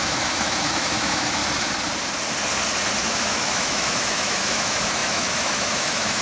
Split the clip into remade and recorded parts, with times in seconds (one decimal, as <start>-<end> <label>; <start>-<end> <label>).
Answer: 0.0-1.4 remade; 1.4-3.0 recorded; 3.0-6.2 remade